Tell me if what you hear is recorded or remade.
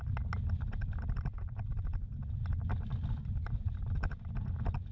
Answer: recorded